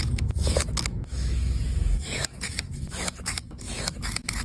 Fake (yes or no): yes